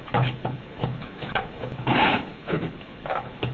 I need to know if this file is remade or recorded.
remade